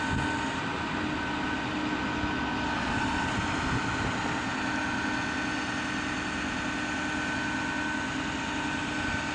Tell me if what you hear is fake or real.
real